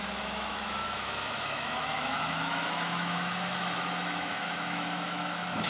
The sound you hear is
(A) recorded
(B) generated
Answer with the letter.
B